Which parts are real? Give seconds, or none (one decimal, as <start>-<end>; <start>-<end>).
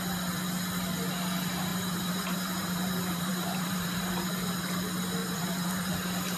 0.0-1.7; 4.3-5.2; 5.9-6.4